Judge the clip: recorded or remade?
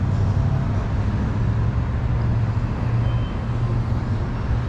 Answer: recorded